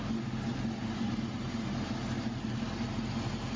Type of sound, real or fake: real